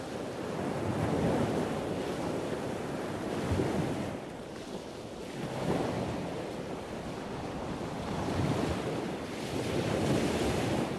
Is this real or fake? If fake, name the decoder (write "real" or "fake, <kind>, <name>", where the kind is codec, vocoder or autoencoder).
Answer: real